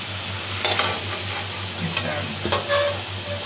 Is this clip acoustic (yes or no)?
yes